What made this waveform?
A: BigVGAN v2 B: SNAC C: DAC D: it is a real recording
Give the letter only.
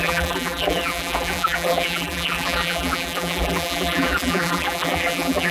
A